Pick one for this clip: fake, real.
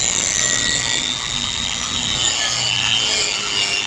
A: real